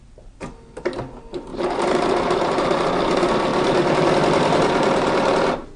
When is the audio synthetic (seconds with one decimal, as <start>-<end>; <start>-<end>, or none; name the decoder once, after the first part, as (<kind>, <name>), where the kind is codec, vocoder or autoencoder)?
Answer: 1.5-2.8 (vocoder, BigVGAN v2); 3.5-5.3